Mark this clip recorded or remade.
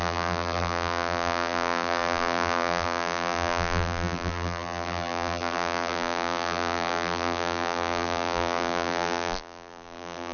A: remade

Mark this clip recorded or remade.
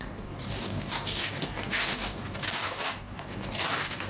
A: remade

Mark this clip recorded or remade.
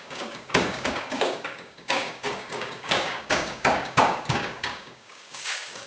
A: remade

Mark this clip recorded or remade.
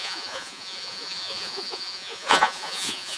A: remade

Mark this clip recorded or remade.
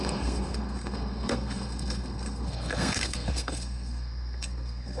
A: remade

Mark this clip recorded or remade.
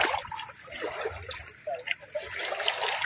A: recorded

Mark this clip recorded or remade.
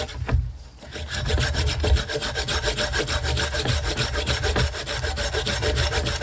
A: recorded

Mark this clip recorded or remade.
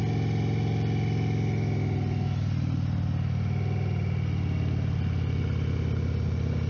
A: recorded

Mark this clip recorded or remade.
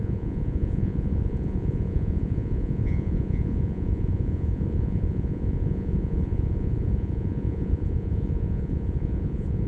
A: remade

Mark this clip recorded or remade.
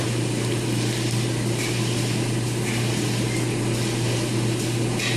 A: recorded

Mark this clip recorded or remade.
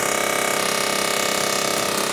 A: recorded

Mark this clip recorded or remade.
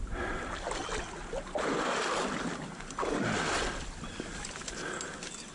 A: recorded